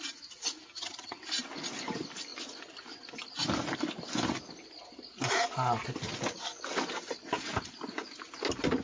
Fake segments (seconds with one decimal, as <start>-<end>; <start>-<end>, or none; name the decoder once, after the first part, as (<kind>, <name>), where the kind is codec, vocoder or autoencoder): 0.7-1.2 (vocoder, HiFi-GAN)